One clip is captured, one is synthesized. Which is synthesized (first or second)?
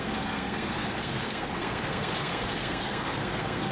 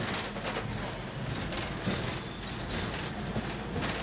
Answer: first